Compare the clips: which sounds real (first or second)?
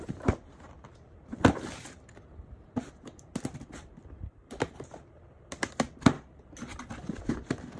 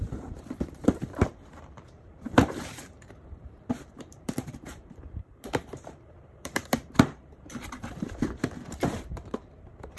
first